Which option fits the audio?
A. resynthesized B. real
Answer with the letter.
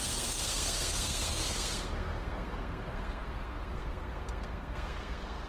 A